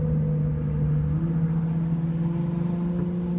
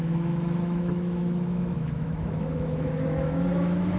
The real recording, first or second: first